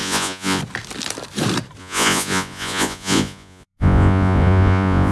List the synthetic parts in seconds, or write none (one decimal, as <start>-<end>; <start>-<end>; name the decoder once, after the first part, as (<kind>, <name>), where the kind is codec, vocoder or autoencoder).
0.0-0.6 (vocoder, Vocos); 1.8-5.1